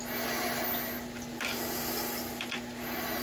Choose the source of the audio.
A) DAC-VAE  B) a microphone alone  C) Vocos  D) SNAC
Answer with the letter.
B